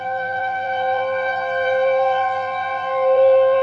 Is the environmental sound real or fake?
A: fake